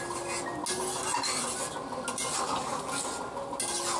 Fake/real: real